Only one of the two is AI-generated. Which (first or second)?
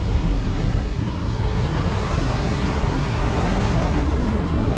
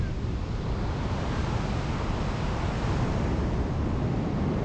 first